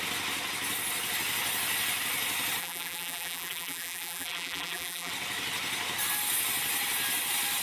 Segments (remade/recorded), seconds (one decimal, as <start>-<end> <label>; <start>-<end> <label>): 0.0-2.6 recorded; 2.6-5.1 remade; 5.1-7.6 recorded